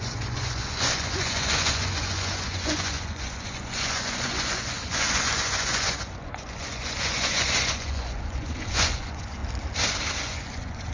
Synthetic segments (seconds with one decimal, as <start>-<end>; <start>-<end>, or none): 0.0-9.4; 10.2-10.9